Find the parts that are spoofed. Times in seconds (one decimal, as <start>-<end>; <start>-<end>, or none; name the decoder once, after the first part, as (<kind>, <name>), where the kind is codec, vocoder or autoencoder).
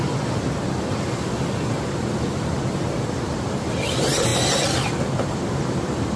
none